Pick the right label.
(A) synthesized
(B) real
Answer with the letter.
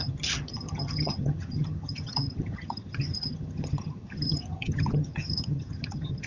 A